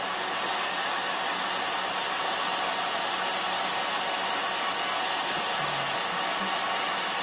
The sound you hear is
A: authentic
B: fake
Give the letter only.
A